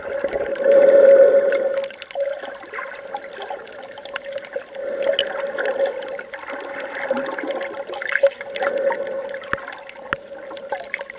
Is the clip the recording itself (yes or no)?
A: yes